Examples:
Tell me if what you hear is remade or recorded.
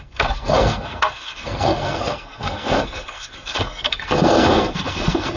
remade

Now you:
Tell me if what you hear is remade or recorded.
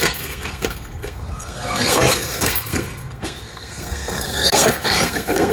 remade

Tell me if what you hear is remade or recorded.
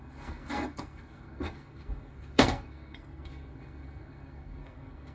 remade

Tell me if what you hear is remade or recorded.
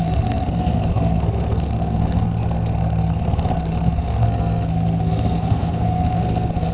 remade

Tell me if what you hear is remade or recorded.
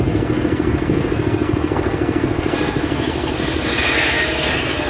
remade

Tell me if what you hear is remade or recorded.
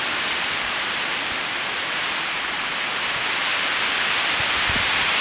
recorded